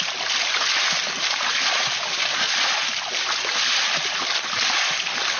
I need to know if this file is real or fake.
real